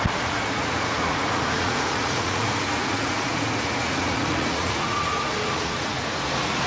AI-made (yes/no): yes